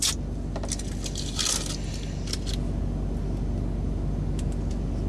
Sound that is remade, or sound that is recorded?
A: recorded